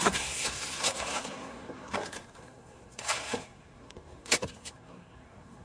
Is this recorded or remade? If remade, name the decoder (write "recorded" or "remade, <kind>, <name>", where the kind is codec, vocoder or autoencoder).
remade, codec, SNAC